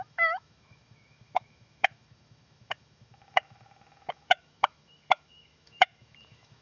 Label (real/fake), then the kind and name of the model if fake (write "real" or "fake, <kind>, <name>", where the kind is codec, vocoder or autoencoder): fake, autoencoder, DAC-VAE